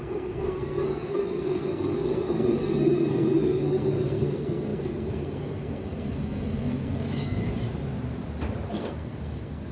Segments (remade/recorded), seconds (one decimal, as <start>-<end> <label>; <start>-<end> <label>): 0.0-7.4 remade; 7.4-8.7 recorded; 8.7-9.7 remade